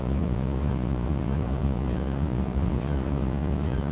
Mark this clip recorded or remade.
remade